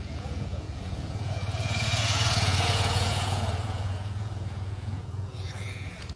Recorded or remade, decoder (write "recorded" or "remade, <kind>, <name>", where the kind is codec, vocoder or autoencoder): remade, vocoder, Vocos